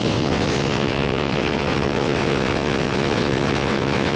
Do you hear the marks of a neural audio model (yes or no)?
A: yes